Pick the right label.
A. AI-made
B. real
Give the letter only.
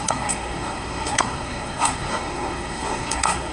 A